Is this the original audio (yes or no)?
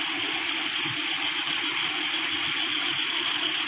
yes